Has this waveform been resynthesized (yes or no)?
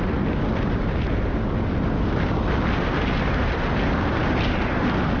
no